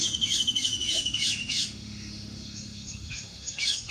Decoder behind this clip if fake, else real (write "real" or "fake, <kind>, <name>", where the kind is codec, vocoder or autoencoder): fake, autoencoder, DAC-VAE